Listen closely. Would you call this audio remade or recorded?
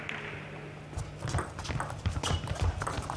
recorded